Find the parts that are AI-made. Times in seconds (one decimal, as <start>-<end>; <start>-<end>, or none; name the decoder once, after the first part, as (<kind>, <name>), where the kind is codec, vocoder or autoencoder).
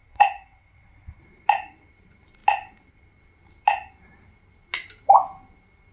0.0-1.2 (vocoder, WaveNeXt)